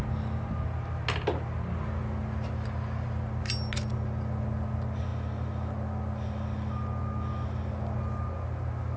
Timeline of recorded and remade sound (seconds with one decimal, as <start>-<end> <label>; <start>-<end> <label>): 0.0-9.0 recorded